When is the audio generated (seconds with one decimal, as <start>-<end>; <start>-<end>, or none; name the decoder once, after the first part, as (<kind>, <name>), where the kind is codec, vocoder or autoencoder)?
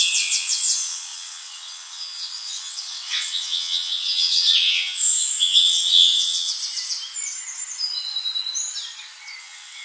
0.0-6.5 (vocoder, WaveNeXt); 9.4-9.8